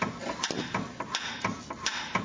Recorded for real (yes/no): yes